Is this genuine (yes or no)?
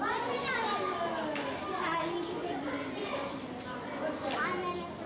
yes